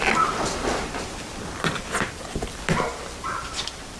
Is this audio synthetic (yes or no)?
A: yes